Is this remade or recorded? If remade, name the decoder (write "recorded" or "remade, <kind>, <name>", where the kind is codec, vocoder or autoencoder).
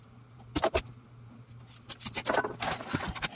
recorded